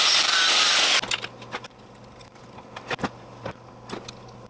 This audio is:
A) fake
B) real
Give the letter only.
B